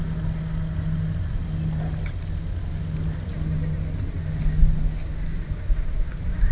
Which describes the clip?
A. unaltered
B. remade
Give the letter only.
A